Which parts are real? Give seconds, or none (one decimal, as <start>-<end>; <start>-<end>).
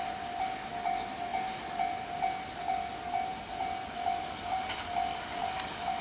0.0-6.0